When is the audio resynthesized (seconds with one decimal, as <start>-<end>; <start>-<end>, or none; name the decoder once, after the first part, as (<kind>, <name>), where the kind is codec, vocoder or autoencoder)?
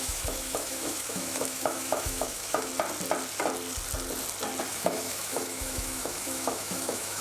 0.0-2.7 (autoencoder, DAC-VAE); 4.7-7.2